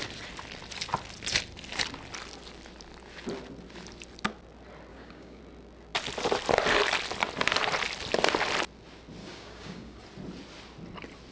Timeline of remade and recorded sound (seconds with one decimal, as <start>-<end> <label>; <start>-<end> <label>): 0.0-4.9 recorded; 4.9-5.4 remade; 5.4-9.2 recorded; 9.2-10.0 remade; 10.0-11.3 recorded